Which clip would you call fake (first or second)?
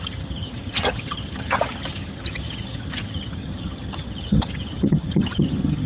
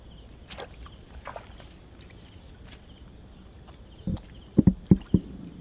first